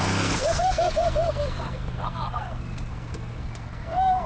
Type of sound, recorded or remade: remade